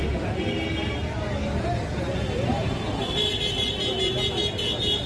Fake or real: real